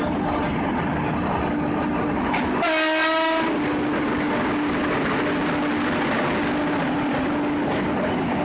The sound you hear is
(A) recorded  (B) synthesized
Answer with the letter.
A